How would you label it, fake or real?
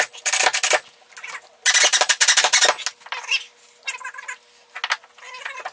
real